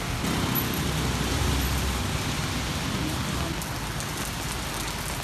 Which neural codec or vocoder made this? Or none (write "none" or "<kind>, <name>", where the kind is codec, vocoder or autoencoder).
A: none